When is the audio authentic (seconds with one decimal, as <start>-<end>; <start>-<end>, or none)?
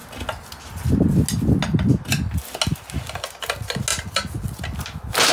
0.0-5.3